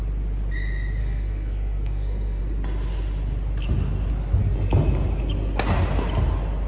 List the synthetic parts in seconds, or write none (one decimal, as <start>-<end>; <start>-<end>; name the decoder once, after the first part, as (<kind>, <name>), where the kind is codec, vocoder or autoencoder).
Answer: 1.0-2.4 (codec, SNAC)